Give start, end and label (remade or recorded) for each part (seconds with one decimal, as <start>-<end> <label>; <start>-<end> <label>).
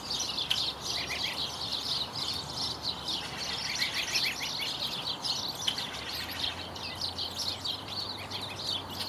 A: 0.0-9.1 recorded